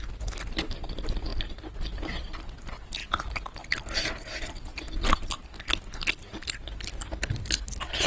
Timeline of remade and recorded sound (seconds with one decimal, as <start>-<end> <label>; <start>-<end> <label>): 0.0-8.1 recorded